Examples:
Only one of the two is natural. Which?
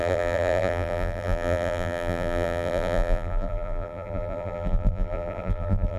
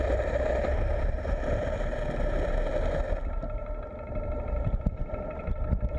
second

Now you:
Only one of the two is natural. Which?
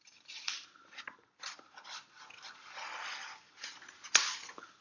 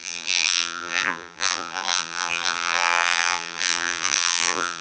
first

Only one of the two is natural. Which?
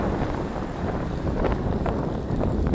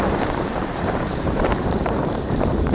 first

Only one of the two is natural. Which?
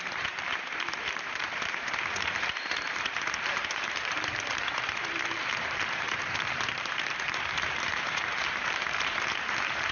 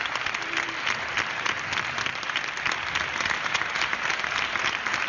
second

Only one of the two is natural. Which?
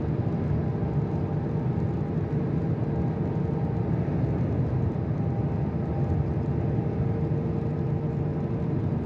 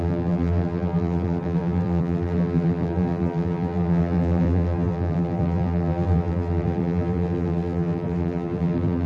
first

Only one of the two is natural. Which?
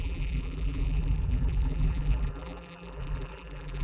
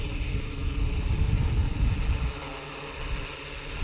second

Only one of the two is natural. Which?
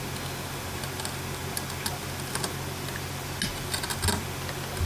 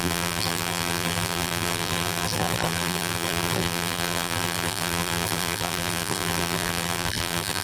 first